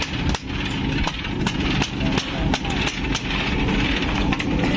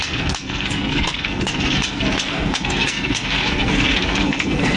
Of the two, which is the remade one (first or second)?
second